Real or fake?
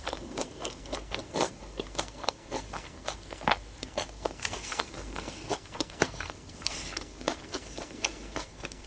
fake